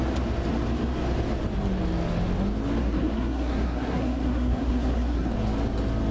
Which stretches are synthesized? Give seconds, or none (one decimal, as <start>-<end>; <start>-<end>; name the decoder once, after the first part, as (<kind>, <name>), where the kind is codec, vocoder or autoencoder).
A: 2.8-5.3 (codec, SNAC)